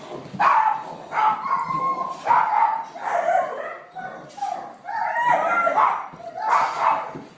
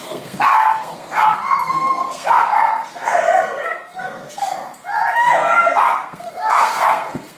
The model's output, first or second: second